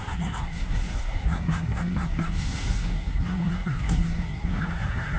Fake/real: fake